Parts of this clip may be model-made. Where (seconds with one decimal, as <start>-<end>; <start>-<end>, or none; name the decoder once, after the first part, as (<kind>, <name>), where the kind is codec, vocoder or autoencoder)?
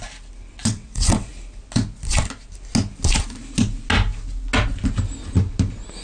0.6-1.3 (vocoder, WaveNeXt)